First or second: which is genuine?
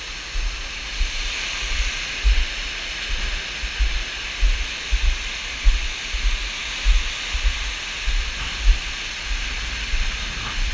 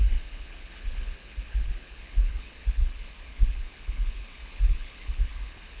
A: first